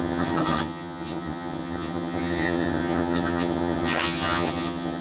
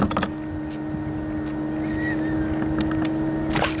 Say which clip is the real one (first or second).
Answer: second